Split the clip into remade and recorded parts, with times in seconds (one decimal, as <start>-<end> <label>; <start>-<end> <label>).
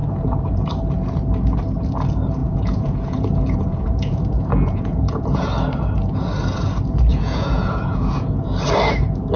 0.0-0.7 remade; 0.7-2.4 recorded; 2.4-5.5 remade; 5.5-7.1 recorded; 7.1-8.5 remade; 8.5-9.4 recorded